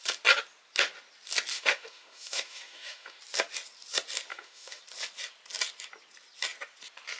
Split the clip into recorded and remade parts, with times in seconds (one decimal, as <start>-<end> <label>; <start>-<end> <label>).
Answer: 0.0-1.5 recorded; 1.5-3.2 remade; 3.2-4.3 recorded; 4.3-4.8 remade; 4.8-7.2 recorded